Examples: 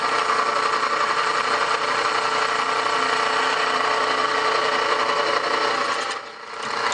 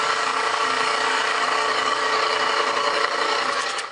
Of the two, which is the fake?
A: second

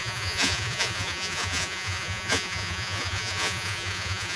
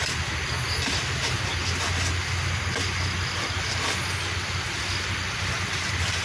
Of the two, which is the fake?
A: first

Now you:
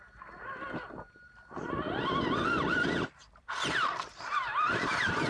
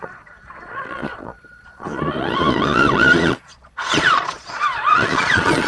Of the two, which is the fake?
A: second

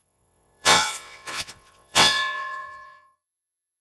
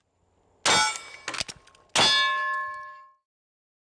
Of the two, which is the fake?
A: first